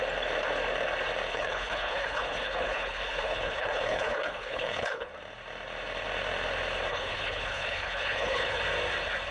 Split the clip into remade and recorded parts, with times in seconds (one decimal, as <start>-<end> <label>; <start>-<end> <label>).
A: 0.0-1.3 recorded; 1.3-5.1 remade; 5.1-6.9 recorded; 6.9-8.6 remade; 8.6-9.3 recorded